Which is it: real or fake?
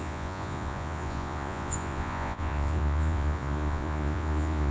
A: fake